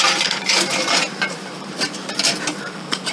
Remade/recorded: remade